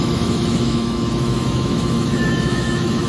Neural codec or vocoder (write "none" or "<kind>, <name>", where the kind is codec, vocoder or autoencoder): autoencoder, DAC-VAE